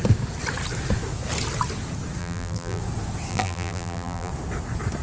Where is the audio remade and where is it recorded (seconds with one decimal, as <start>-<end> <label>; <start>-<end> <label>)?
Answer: 0.0-2.2 recorded; 2.2-2.8 remade; 2.8-3.3 recorded; 3.3-4.3 remade; 4.3-5.0 recorded